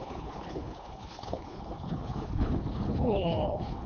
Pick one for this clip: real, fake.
fake